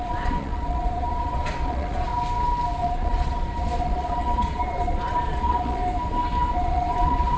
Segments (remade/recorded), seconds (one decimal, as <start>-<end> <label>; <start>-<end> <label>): 0.0-2.1 remade; 2.1-2.8 recorded; 2.8-5.8 remade; 5.8-6.5 recorded; 6.5-7.4 remade

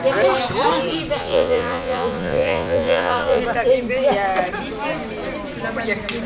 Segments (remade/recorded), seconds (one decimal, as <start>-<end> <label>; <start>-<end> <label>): 0.0-1.2 recorded; 1.2-3.4 remade; 3.4-6.3 recorded